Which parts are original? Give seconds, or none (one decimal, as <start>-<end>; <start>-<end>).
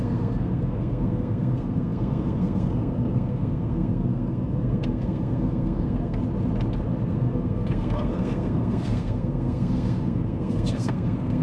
6.2-7.1